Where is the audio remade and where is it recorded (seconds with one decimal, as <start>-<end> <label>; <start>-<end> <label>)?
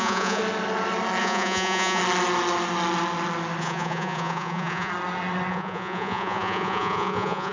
0.0-0.4 remade; 0.4-1.2 recorded; 1.2-2.0 remade; 2.0-3.6 recorded; 3.6-4.9 remade; 4.9-5.5 recorded; 5.5-7.5 remade